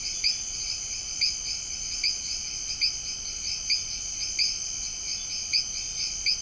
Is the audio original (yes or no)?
yes